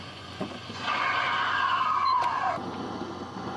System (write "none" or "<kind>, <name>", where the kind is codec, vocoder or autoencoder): vocoder, Vocos